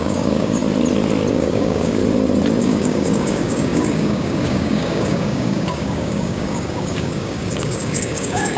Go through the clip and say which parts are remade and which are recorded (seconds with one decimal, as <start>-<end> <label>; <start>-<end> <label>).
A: 0.0-0.6 remade; 0.6-1.3 recorded; 1.3-2.0 remade; 2.0-2.6 recorded; 2.6-8.6 remade